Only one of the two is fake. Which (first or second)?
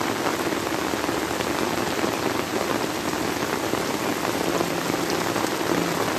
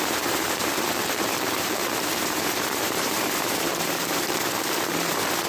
second